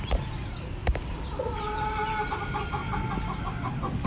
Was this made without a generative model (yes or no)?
yes